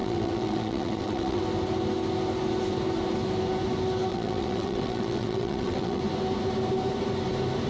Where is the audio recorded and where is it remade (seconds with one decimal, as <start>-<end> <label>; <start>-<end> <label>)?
0.0-1.4 remade; 1.4-4.1 recorded; 4.1-6.0 remade; 6.0-7.7 recorded